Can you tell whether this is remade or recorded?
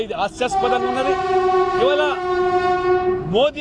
recorded